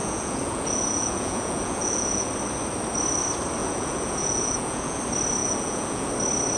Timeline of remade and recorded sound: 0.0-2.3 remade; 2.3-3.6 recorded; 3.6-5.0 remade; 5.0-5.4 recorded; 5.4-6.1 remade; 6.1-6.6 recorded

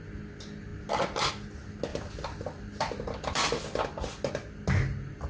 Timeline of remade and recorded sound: 0.0-0.7 recorded; 0.7-1.3 remade; 1.3-1.9 recorded; 1.9-4.3 remade; 4.3-5.3 recorded

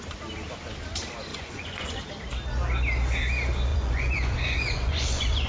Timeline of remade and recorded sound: 0.0-1.3 recorded; 1.3-2.0 remade; 2.0-3.7 recorded; 3.7-5.5 remade